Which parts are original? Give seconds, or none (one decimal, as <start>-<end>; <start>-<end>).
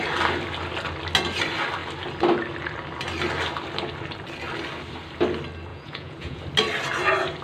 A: 0.0-5.7; 6.4-7.4